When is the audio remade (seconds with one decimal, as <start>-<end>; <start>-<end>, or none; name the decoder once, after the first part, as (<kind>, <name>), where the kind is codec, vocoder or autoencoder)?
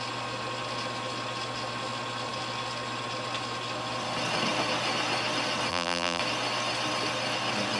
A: 5.7-6.2 (vocoder, BigVGAN v2)